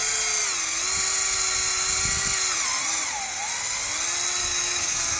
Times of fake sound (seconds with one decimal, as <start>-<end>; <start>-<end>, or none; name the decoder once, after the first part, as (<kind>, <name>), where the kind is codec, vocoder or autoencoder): 4.4-5.2 (codec, DAC)

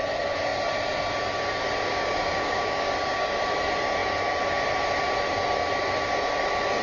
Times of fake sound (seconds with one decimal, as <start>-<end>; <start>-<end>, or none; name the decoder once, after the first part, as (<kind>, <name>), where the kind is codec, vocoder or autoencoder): 1.9-3.4 (codec, DAC)

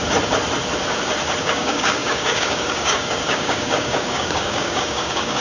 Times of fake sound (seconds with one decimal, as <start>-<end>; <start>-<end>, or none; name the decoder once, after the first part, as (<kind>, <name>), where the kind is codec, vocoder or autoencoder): 1.4-5.4 (codec, DAC)

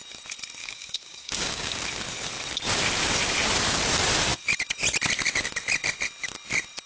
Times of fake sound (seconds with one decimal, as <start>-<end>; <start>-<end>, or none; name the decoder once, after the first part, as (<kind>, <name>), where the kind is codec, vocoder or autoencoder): 0.6-1.8 (codec, DAC)

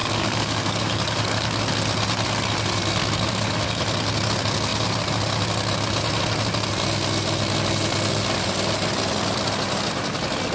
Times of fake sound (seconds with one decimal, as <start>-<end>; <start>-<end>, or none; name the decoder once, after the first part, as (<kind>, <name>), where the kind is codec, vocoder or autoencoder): 0.0-1.6 (codec, DAC); 3.0-3.8

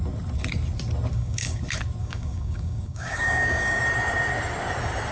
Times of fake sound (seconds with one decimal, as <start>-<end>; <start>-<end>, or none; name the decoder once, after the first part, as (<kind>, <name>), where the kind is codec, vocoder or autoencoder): 1.1-1.6 (codec, DAC); 2.0-3.8

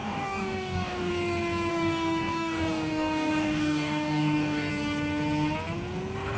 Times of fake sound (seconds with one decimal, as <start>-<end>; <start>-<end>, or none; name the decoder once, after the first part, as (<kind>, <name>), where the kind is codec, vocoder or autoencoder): 0.0-1.1 (codec, DAC); 1.7-4.7

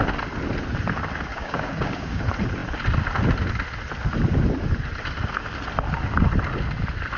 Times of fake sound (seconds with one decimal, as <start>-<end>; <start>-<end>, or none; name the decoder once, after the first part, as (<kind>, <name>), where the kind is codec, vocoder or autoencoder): 1.3-2.2 (codec, DAC)